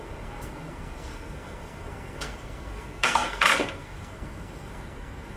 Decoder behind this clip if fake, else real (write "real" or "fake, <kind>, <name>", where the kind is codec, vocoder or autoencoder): fake, codec, SNAC